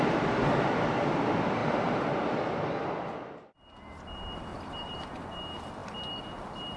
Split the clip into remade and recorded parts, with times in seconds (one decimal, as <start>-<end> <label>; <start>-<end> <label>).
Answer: 0.0-1.6 recorded; 1.6-2.3 remade; 2.3-4.5 recorded; 4.5-5.1 remade; 5.1-6.8 recorded